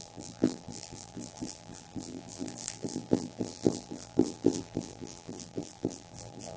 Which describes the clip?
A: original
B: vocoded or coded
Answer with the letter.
B